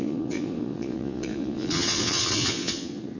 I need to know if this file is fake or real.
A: fake